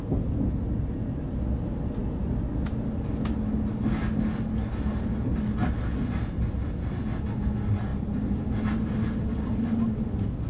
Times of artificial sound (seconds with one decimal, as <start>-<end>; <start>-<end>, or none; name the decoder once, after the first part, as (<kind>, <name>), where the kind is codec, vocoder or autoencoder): 7.9-9.4 (vocoder, BigVGAN v2)